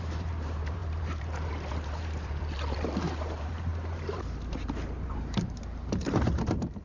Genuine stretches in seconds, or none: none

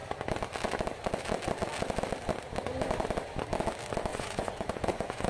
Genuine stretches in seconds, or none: 0.0-4.1

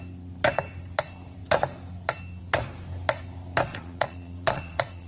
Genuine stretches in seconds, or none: 0.0-3.7

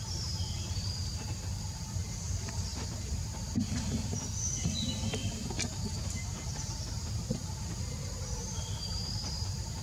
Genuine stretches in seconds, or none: none

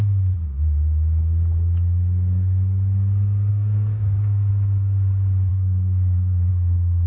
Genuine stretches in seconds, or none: 0.0-3.5; 4.5-5.5; 6.5-7.1

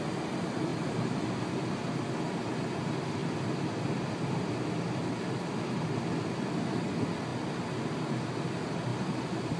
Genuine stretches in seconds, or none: 0.0-3.2; 4.8-8.9

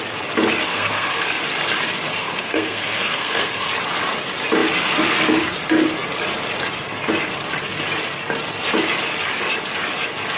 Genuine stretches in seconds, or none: 0.0-0.7; 1.4-2.2; 3.7-10.4